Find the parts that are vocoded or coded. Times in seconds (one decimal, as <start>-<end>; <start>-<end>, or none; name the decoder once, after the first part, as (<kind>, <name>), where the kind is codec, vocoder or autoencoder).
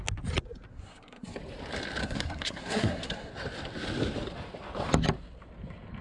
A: 0.7-1.4 (codec, SNAC); 2.0-3.3